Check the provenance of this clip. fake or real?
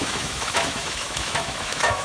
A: fake